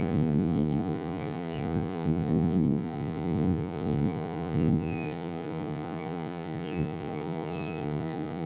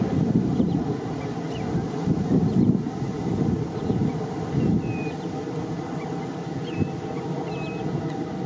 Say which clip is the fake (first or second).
first